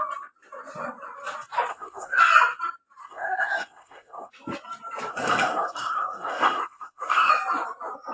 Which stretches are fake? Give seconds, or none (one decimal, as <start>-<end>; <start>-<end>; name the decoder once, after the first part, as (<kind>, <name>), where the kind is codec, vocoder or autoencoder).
1.7-2.2 (codec, SNAC); 3.0-4.3; 5.1-7.3